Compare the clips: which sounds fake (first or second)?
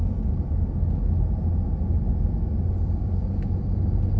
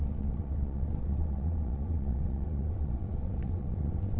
second